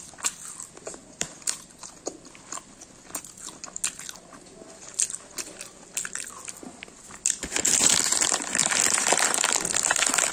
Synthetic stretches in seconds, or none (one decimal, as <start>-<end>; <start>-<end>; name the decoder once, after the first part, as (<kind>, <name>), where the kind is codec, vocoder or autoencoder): 1.0-1.9 (vocoder, BigVGAN v2)